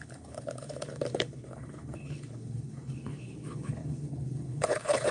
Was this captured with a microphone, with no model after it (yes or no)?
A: no